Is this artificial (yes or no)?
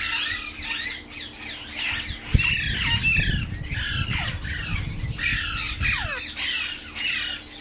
no